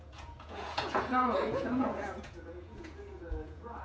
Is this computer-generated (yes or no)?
yes